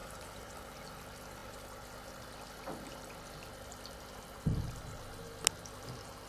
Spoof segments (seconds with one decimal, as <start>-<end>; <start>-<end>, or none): 0.0-0.7